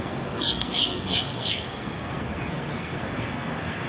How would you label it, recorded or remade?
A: remade